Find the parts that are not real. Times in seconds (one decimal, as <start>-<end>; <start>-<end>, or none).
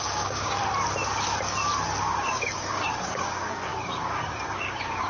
0.0-0.6; 2.0-5.1